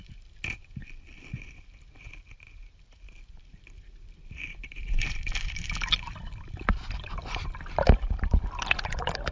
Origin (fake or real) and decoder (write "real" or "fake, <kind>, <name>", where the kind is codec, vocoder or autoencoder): fake, vocoder, BigVGAN v2